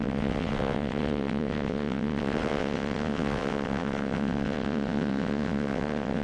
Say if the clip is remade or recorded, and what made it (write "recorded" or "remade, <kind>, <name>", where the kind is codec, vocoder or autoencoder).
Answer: remade, vocoder, WaveNeXt